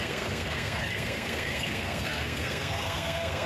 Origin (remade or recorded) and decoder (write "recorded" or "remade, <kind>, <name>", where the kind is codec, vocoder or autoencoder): remade, codec, SNAC